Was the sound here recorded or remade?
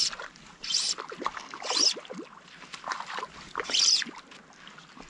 recorded